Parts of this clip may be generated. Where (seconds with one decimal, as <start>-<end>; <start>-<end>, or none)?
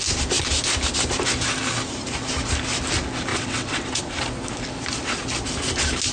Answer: 3.3-4.0